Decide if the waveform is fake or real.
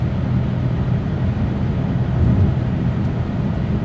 real